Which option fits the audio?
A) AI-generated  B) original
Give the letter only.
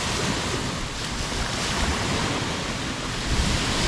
B